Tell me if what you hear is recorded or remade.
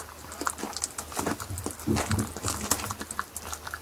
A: recorded